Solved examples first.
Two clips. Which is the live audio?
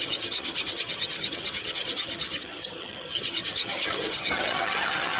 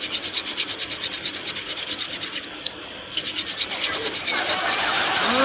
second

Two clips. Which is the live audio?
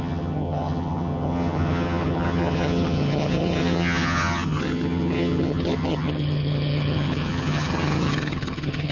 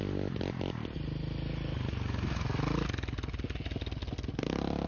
second